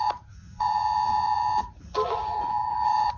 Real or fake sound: fake